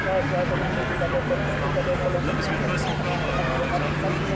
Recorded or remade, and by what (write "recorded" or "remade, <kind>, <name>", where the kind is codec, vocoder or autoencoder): recorded